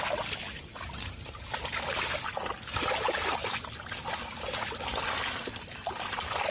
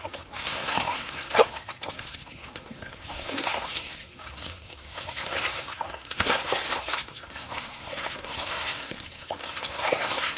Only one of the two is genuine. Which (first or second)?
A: first